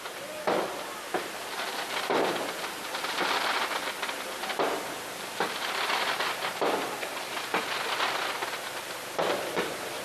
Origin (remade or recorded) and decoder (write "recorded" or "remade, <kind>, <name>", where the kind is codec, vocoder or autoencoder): remade, vocoder, BigVGAN v2